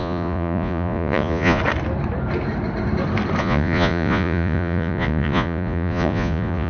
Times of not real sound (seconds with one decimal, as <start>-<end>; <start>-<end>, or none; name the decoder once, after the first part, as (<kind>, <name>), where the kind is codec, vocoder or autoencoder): 0.0-1.6 (vocoder, Vocos); 3.4-6.7